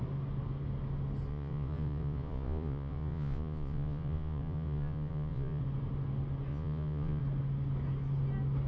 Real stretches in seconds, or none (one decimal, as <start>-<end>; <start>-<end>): 0.0-1.3; 5.6-6.5; 7.2-8.7